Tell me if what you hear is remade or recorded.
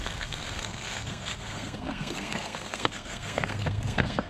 remade